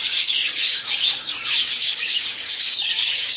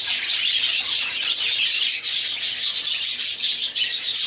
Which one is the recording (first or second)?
second